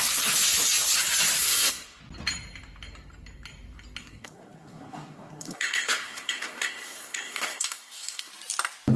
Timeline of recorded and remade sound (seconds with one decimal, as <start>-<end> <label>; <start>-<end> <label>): 0.0-1.4 recorded; 1.4-2.0 remade; 2.0-4.0 recorded; 4.0-8.3 remade; 8.3-9.0 recorded

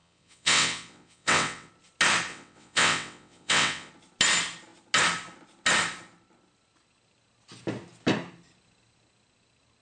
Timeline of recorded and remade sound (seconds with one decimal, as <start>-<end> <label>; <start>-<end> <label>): 0.0-1.7 remade; 1.7-2.3 recorded; 2.3-3.9 remade; 3.9-9.8 recorded

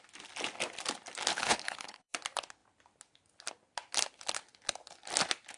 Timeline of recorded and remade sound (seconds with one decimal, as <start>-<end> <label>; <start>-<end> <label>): 0.0-1.3 recorded; 1.3-2.1 remade; 2.1-5.6 recorded

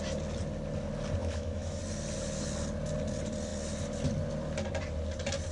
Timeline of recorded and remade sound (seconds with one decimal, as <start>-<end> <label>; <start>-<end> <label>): 0.0-1.2 recorded; 1.2-1.8 remade; 1.8-5.5 recorded

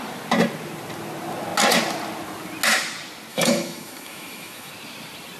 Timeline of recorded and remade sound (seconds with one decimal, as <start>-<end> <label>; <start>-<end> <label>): 0.0-3.3 recorded; 3.3-4.7 remade; 4.7-5.4 recorded

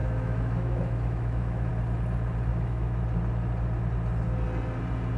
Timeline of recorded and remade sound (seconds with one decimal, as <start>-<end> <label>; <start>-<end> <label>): 0.0-1.7 remade; 1.7-2.5 recorded; 2.5-3.0 remade; 3.0-5.2 recorded

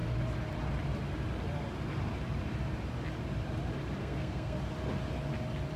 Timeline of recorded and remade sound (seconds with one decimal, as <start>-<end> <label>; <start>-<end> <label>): 0.0-4.0 recorded; 4.0-4.6 remade; 4.6-5.8 recorded

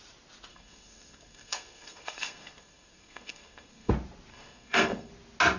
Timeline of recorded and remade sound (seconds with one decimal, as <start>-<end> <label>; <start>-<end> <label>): 0.0-0.5 recorded; 0.5-3.9 remade; 3.9-4.3 recorded; 4.3-5.1 remade; 5.1-5.6 recorded